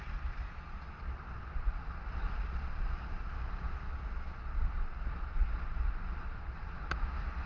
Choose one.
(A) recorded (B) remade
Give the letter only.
A